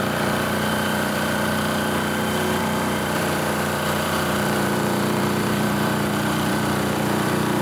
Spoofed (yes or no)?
yes